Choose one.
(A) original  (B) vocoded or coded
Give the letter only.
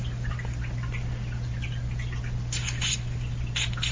A